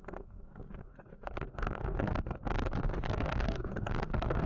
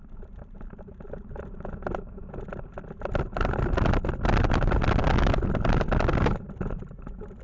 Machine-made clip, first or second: first